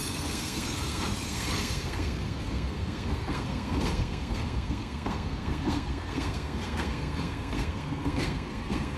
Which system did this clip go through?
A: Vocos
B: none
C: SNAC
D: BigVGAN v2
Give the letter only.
C